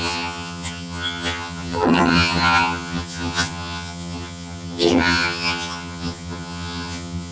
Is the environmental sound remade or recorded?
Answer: remade